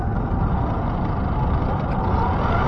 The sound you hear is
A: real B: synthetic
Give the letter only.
A